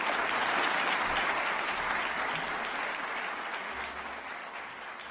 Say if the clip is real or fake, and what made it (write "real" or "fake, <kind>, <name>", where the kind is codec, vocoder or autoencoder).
real